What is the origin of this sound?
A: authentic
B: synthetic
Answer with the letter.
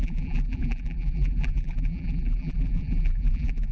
B